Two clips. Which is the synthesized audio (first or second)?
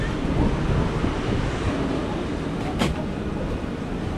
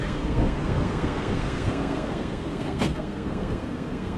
second